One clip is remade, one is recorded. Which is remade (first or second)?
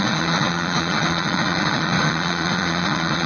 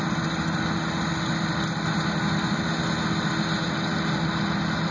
first